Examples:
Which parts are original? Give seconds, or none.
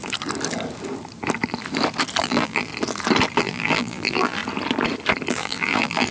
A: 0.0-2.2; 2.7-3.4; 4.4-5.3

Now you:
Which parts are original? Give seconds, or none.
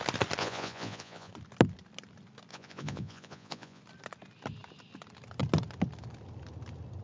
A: 0.0-0.4; 1.3-2.5; 3.8-7.0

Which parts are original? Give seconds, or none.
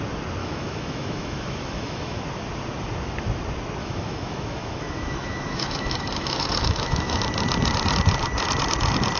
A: 0.0-0.4; 2.2-3.8; 7.2-9.2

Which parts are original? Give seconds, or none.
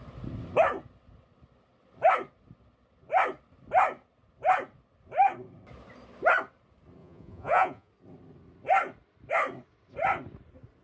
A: 0.0-7.0; 7.9-10.8